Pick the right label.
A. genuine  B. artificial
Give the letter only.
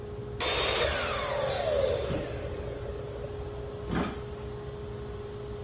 A